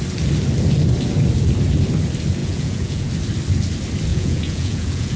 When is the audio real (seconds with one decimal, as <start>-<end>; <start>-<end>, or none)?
0.0-2.4; 3.1-4.1